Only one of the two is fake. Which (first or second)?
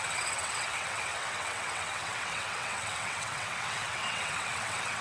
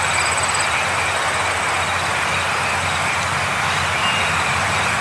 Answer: first